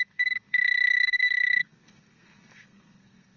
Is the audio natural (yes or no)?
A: no